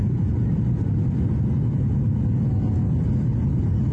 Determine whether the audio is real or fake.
real